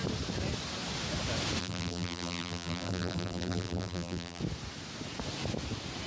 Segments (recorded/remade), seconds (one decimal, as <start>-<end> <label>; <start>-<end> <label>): 0.0-1.6 recorded; 1.6-4.4 remade; 4.4-6.1 recorded